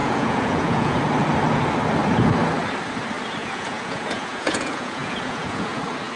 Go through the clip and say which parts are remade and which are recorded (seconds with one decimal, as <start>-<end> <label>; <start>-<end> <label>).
0.0-1.0 remade; 1.0-3.4 recorded; 3.4-5.8 remade; 5.8-6.2 recorded